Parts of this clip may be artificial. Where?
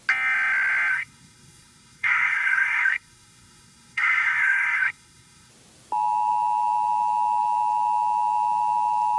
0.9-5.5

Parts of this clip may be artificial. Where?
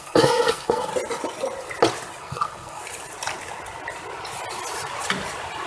0.0-0.9; 2.2-2.8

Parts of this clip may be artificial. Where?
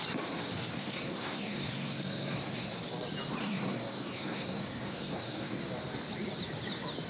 0.7-2.7; 3.4-5.6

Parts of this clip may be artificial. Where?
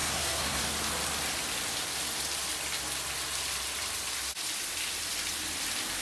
0.0-0.6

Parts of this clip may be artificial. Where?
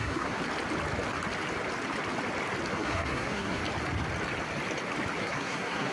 0.0-0.4; 2.7-3.6; 5.2-5.9